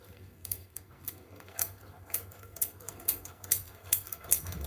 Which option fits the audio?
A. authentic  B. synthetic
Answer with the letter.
B